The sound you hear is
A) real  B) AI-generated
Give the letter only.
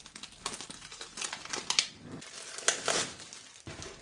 A